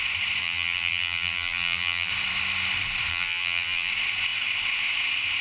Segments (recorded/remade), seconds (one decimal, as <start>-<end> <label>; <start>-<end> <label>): 0.0-0.4 recorded; 0.4-2.1 remade; 2.1-3.1 recorded; 3.1-3.9 remade; 3.9-5.4 recorded